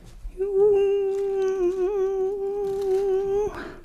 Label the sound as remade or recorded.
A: recorded